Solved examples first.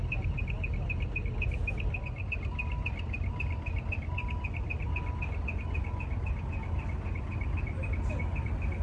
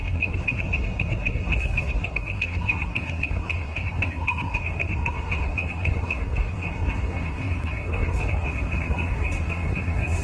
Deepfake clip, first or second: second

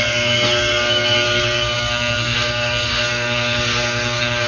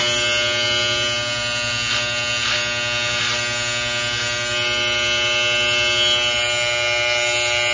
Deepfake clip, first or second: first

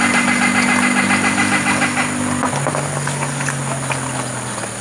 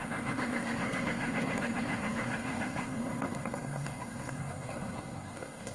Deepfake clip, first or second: second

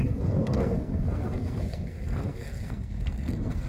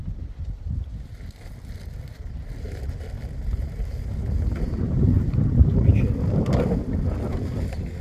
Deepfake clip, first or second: first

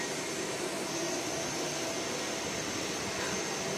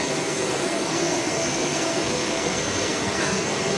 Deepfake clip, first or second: second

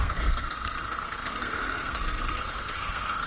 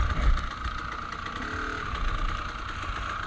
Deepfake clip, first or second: first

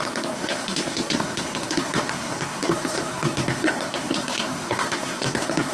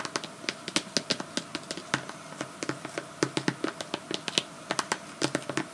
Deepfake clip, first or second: first